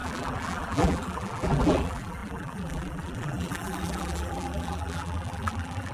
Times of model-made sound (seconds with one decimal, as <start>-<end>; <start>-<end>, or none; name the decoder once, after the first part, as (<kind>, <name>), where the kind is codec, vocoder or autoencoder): 0.0-5.9 (vocoder, BigVGAN v2)